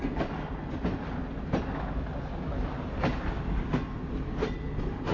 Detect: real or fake real